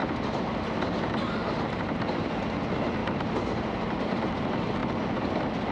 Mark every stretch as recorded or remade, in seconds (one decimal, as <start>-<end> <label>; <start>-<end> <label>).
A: 0.0-1.4 recorded; 1.4-2.4 remade; 2.4-3.0 recorded; 3.0-4.3 remade; 4.3-5.7 recorded